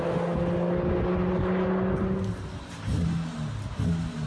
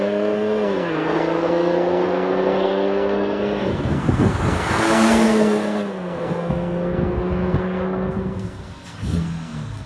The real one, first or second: first